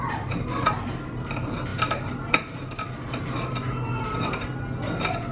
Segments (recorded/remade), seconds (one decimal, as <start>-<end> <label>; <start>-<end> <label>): 0.0-5.3 recorded